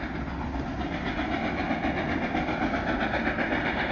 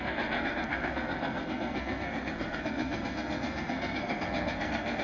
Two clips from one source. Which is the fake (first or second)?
second